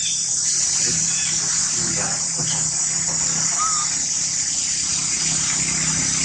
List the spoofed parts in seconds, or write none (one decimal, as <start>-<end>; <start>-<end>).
1.6-2.4